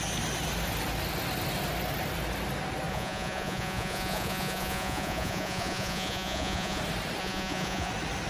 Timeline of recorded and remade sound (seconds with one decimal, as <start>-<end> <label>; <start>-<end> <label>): 0.0-2.9 recorded; 2.9-6.8 remade; 6.8-7.2 recorded; 7.2-7.9 remade; 7.9-8.3 recorded